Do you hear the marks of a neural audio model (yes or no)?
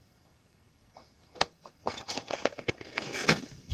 yes